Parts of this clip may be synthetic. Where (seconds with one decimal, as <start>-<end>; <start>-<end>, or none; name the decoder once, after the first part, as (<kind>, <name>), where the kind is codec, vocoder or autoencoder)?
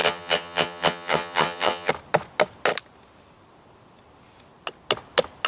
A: 0.0-1.9 (vocoder, HiFi-GAN)